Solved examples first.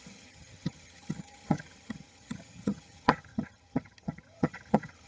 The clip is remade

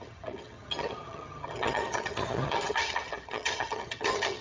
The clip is remade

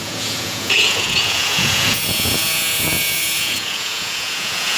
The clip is remade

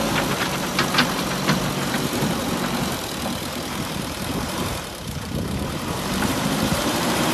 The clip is remade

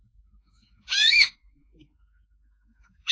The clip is remade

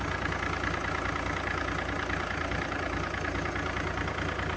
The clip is recorded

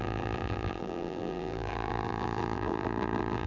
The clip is remade